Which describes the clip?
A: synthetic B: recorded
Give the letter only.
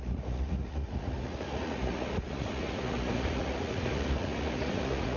A